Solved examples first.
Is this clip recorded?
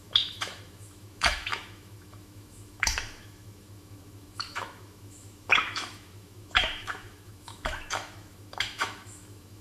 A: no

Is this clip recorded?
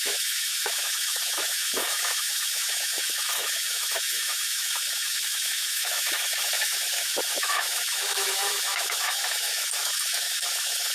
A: no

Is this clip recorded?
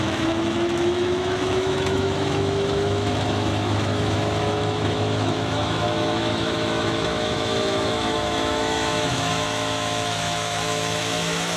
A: no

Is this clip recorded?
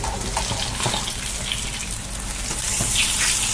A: yes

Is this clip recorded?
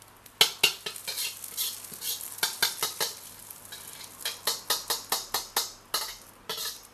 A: yes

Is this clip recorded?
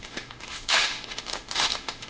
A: no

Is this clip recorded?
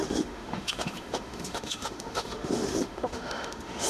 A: no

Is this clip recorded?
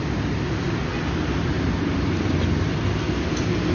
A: yes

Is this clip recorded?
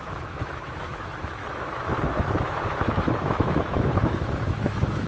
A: no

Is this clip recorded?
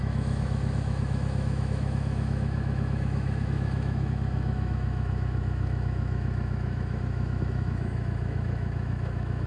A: no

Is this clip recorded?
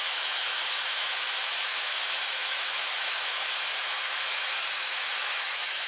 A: no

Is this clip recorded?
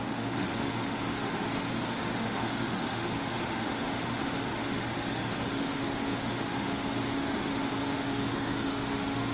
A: no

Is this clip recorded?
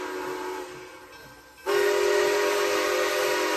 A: yes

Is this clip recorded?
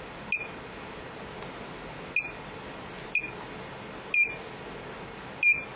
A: yes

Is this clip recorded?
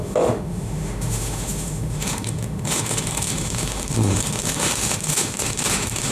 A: no